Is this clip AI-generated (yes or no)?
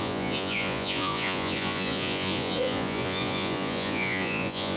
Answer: yes